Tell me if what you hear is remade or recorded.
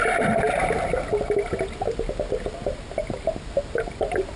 recorded